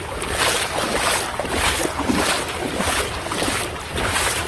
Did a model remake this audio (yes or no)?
no